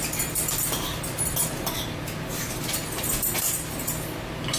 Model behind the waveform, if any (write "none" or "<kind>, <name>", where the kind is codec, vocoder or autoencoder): none